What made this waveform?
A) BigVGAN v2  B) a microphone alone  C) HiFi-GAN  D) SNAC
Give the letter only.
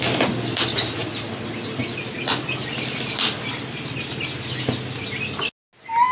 B